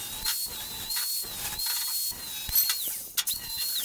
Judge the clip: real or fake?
real